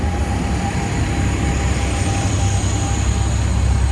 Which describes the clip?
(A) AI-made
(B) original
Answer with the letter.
B